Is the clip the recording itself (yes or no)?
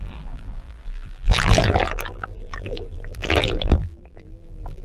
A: no